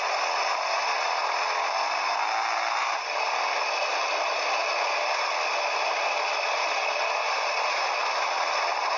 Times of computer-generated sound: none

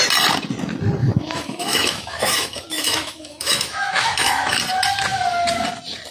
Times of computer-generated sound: 1.0-4.6 (autoencoder, DAC-VAE)

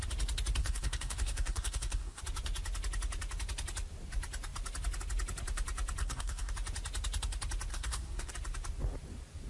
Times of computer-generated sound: 0.6-2.2 (codec, SNAC); 6.0-6.5; 7.7-8.3

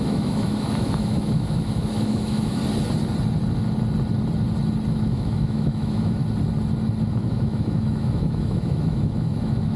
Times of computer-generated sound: 0.0-2.6 (autoencoder, DAC-VAE); 4.9-6.2; 7.1-9.8

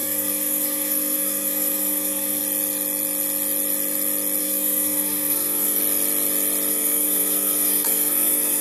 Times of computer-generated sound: 0.0-2.4 (codec, SNAC); 4.4-5.8; 6.7-8.6

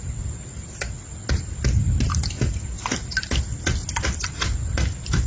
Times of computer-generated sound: none